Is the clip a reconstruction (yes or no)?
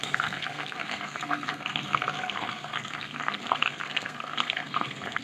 yes